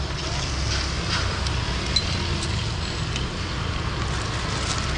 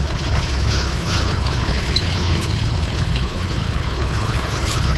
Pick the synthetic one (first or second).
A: second